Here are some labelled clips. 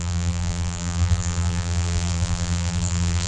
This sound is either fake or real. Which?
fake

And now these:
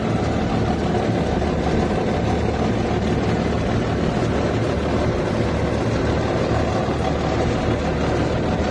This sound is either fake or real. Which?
real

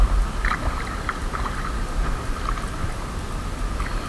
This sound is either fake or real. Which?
real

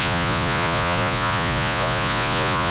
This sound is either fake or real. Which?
fake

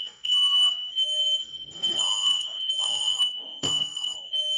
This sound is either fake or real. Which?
fake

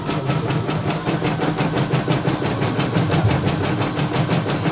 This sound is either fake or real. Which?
real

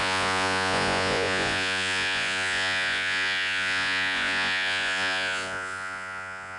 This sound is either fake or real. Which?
fake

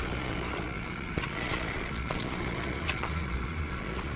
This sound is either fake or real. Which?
fake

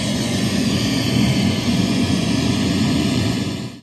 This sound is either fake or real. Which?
fake